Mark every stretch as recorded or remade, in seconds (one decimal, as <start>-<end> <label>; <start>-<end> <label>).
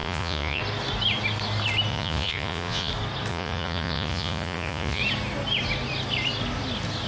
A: 0.0-0.6 remade; 0.6-1.9 recorded; 1.9-2.9 remade; 2.9-3.3 recorded; 3.3-5.0 remade; 5.0-7.1 recorded